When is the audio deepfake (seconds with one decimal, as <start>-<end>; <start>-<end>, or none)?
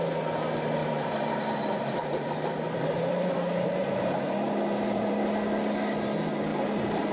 0.8-5.1; 6.5-7.1